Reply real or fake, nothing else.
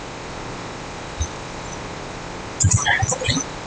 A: fake